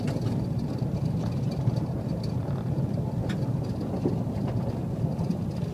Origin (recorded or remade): recorded